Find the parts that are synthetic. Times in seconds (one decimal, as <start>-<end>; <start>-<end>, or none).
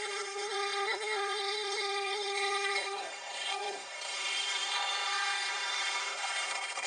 0.0-6.9